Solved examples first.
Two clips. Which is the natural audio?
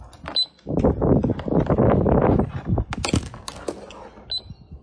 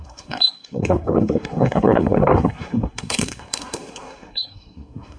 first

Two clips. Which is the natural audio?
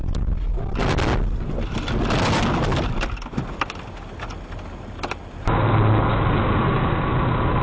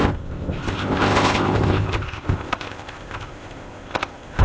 first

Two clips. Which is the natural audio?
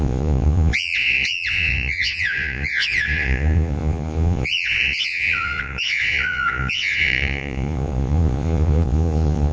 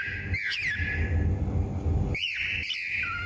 second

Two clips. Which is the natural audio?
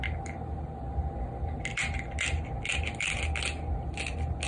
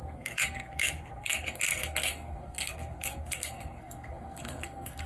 first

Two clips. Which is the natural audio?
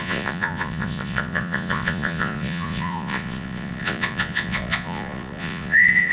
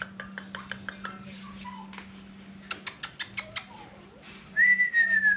second